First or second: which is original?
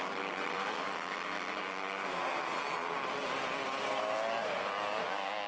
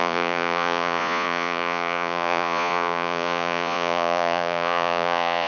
first